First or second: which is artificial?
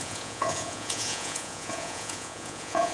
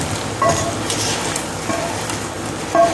first